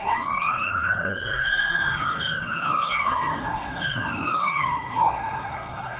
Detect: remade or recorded remade